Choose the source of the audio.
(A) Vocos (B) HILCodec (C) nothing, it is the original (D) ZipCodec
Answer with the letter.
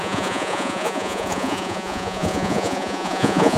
A